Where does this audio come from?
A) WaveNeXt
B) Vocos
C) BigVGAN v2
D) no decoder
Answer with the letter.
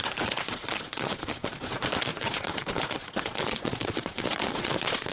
B